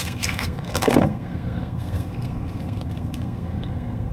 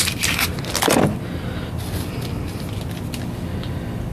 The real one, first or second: second